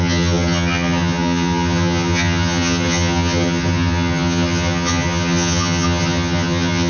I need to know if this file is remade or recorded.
remade